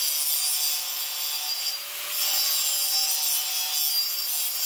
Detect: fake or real real